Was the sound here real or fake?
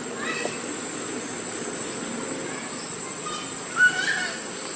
real